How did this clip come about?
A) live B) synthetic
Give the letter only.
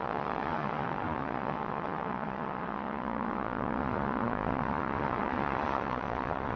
B